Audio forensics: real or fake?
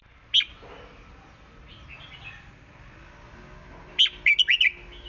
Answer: real